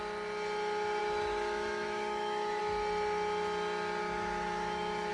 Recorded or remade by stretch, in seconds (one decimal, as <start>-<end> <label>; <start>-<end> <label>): 0.0-1.0 recorded; 1.0-2.6 remade; 2.6-4.0 recorded; 4.0-5.1 remade